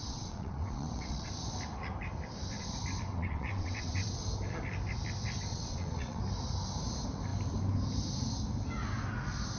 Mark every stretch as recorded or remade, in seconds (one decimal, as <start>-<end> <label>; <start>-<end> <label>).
0.0-1.3 remade; 1.3-3.1 recorded; 3.1-4.1 remade; 4.1-5.5 recorded; 5.5-6.2 remade; 6.2-9.6 recorded